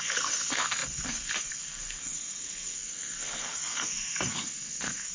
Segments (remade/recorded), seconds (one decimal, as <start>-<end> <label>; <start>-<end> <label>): 0.0-5.1 remade